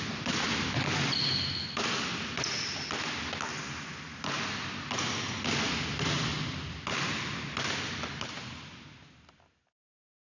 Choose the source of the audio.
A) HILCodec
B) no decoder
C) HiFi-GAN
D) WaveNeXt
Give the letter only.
B